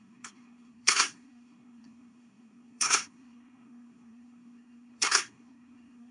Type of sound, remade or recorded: remade